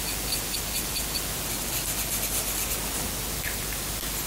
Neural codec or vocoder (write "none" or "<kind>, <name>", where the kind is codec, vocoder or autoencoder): none